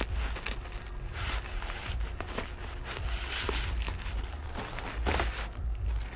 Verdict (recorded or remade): recorded